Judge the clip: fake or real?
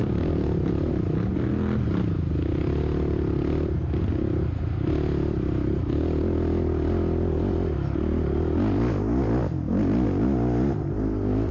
real